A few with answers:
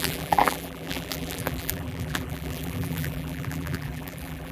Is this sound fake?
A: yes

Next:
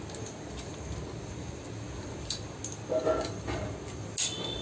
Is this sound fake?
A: no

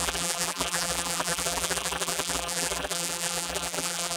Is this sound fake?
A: yes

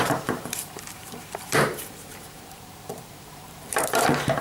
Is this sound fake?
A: yes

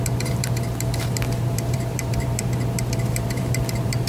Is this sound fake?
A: yes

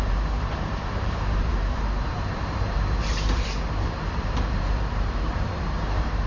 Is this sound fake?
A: yes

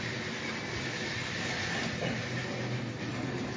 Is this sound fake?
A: no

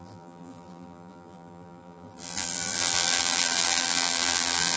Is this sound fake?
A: yes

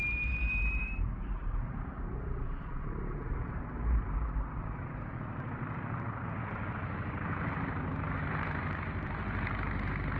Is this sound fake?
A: yes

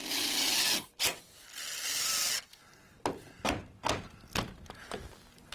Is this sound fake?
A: no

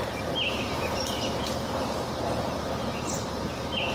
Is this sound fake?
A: yes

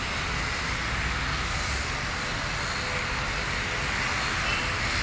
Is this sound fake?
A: no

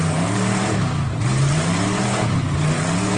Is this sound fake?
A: yes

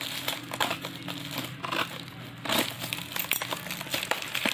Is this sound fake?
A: no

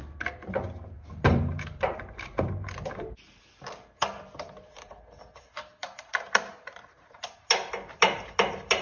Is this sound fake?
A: yes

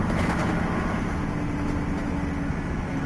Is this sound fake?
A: no